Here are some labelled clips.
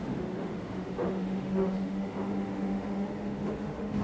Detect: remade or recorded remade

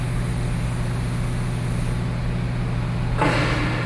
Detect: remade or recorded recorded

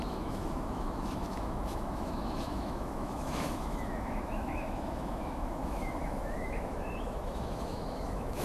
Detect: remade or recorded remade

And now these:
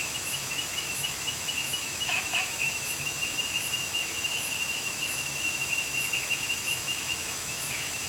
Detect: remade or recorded remade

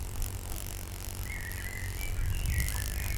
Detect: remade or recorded recorded